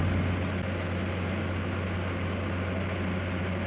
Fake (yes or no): no